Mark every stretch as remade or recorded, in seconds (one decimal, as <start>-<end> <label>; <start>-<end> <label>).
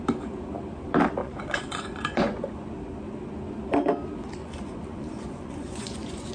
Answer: 0.0-1.2 recorded; 1.2-2.7 remade; 2.7-4.4 recorded; 4.4-6.3 remade